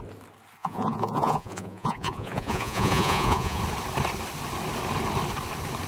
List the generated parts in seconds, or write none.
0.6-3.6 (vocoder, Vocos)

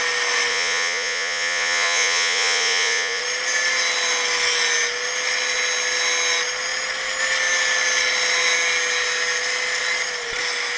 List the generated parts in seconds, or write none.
0.5-3.2 (vocoder, Vocos)

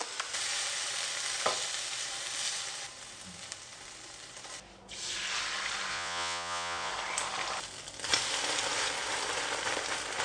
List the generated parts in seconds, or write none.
5.9-6.9 (vocoder, Vocos)

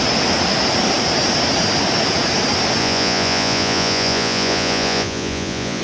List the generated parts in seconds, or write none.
2.8-5.8 (vocoder, Vocos)

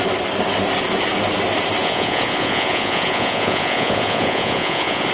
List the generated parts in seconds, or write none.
1.8-5.1 (vocoder, Vocos)